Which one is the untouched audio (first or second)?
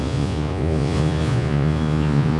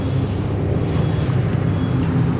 second